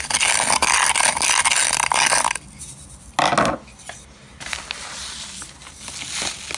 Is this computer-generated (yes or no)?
no